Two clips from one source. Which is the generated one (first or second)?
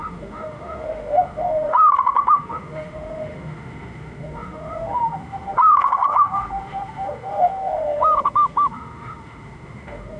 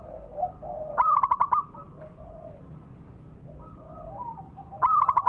first